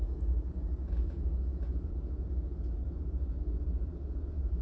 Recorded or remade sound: remade